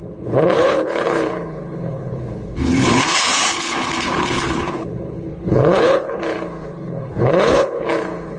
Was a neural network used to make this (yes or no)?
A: yes